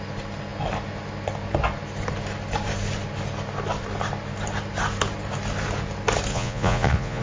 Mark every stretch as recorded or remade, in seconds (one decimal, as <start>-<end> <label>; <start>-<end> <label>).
0.0-6.3 recorded; 6.3-7.2 remade

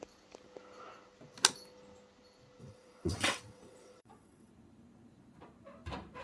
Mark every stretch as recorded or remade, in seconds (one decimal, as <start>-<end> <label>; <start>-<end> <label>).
0.0-2.6 recorded; 2.6-4.5 remade; 4.5-6.2 recorded